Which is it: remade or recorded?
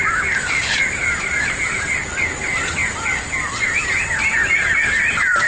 recorded